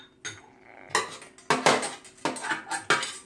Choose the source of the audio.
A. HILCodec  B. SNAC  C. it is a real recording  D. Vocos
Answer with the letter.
C